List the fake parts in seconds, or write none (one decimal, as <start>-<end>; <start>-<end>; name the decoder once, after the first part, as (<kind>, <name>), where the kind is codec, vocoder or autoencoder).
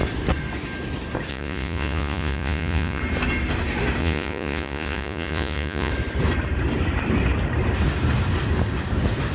1.3-3.0 (vocoder, Vocos); 4.0-5.9